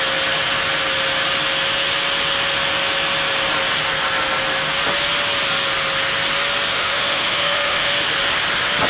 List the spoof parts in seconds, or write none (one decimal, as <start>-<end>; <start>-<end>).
6.7-7.9